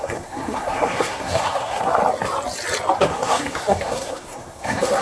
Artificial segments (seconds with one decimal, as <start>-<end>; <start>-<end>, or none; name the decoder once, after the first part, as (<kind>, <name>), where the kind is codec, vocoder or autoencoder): 0.0-2.0 (codec, SNAC); 3.0-5.0